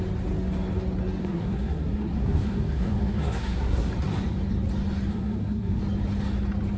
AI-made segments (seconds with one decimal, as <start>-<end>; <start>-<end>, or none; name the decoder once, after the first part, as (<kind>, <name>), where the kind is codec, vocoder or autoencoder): 1.2-3.9 (codec, SNAC); 5.1-5.8